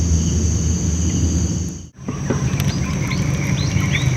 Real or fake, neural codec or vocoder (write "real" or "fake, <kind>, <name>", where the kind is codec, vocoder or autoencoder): real